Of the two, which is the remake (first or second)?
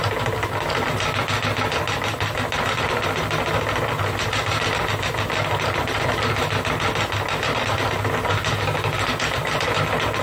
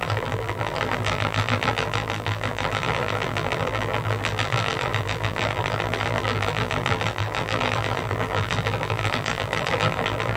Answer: second